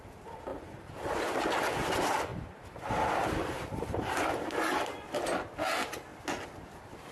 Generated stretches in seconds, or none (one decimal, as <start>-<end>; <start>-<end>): 0.5-1.3; 2.3-4.2